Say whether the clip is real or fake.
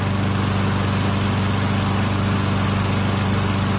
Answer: real